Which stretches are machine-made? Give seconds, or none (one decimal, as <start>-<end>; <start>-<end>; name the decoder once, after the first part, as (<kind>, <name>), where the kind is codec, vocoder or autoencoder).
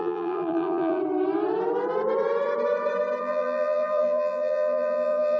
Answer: 0.0-1.0 (vocoder, BigVGAN v2); 3.2-5.4